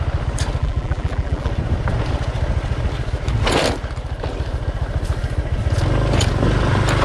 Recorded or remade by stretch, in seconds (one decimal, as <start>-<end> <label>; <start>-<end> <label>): 0.0-0.6 recorded; 0.6-1.5 remade; 1.5-7.0 recorded